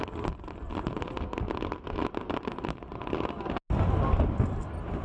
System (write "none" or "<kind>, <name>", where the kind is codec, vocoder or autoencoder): none